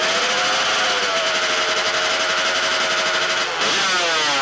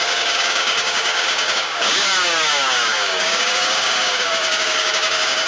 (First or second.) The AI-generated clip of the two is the second